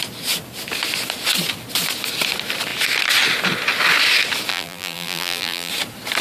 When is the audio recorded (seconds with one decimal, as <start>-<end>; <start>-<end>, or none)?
0.0-4.5; 5.7-6.2